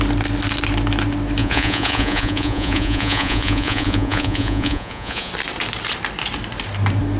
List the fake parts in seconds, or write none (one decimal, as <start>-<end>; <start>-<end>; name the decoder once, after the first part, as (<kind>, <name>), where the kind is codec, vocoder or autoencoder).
1.4-5.3 (vocoder, Vocos)